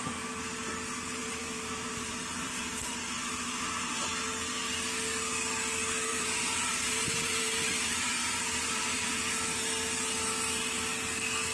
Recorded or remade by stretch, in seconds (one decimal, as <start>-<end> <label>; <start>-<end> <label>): 0.0-1.2 recorded; 1.2-4.1 remade; 4.1-6.1 recorded; 6.1-9.1 remade; 9.1-11.5 recorded